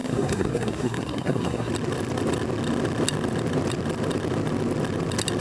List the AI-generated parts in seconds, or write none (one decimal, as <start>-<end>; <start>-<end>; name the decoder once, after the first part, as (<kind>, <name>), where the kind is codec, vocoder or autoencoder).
0.0-1.7 (codec, SNAC)